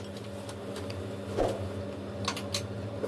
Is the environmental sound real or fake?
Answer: real